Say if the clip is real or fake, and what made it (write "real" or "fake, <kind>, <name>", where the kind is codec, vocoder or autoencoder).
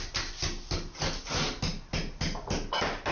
real